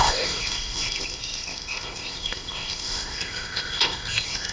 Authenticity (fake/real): fake